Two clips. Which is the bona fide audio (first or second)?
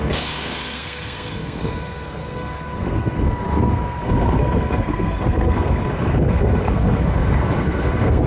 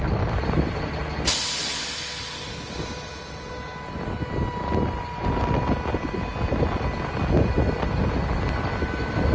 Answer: second